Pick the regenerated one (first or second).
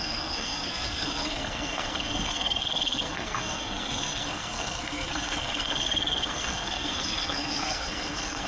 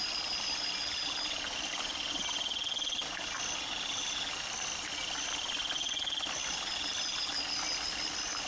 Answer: first